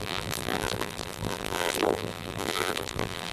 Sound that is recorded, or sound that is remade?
remade